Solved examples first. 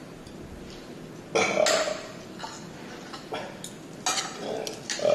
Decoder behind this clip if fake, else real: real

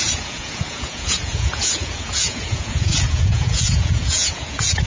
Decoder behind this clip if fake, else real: fake, vocoder, Vocos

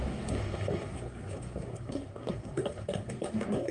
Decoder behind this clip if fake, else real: fake, codec, SNAC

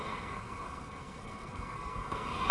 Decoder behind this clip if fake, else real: fake, codec, SNAC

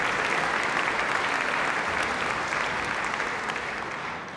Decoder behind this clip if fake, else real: real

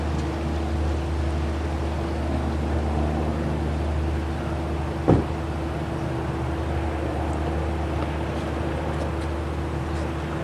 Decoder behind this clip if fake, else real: real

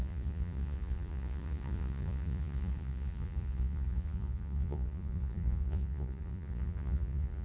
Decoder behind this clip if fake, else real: fake, vocoder, Vocos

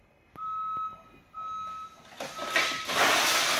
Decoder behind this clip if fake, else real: real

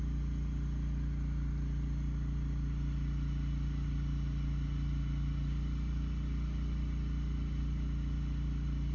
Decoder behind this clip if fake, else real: real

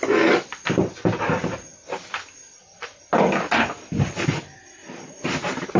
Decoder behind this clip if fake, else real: real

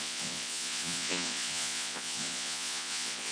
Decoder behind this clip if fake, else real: fake, vocoder, Vocos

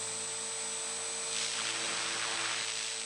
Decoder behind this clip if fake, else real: real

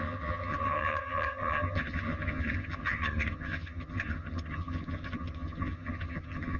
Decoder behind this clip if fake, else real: fake, vocoder, HiFi-GAN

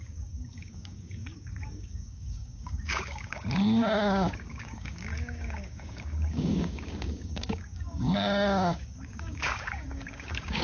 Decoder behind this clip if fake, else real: fake, codec, DAC